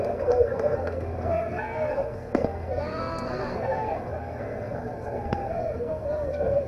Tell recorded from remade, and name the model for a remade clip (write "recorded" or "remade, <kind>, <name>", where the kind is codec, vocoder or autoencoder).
remade, codec, SNAC